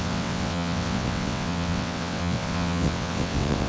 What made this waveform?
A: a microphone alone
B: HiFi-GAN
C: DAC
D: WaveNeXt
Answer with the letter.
D